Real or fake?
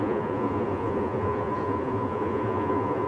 fake